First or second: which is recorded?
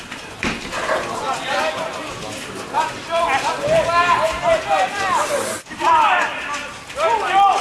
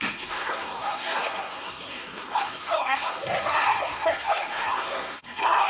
first